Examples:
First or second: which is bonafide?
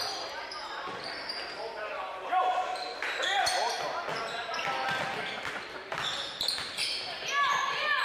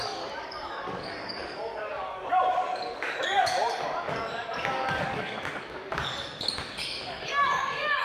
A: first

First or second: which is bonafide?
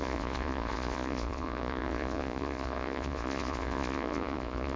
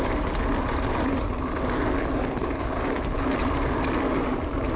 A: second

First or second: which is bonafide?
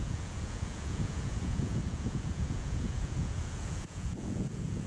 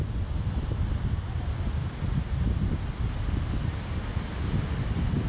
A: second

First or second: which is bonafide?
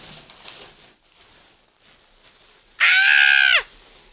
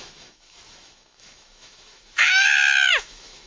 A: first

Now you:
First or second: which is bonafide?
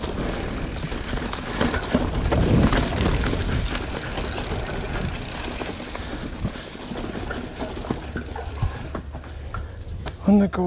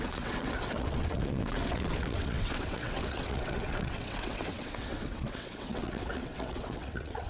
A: first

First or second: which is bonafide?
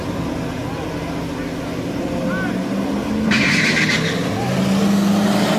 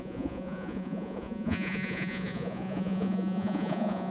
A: first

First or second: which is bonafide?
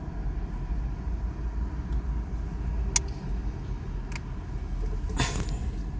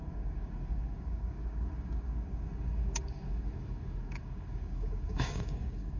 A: first